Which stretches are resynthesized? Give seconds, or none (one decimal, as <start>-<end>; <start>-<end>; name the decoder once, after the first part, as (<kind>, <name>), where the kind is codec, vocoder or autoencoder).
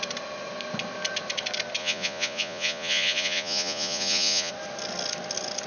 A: 1.8-4.5 (vocoder, Vocos)